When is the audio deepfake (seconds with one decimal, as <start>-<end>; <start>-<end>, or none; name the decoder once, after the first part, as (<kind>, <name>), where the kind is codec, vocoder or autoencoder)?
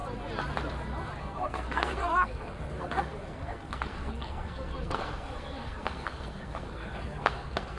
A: 1.2-7.8 (codec, SNAC)